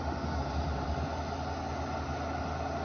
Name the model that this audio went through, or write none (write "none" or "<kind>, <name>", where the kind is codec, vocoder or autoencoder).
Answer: none